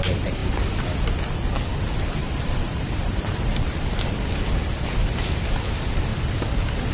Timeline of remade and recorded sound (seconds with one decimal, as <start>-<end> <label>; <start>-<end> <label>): 0.0-2.2 recorded; 2.2-4.1 remade; 4.1-6.9 recorded